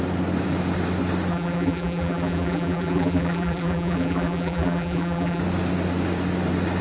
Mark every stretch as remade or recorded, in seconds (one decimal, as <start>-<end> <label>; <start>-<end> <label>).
0.0-1.3 recorded; 1.3-5.4 remade; 5.4-6.8 recorded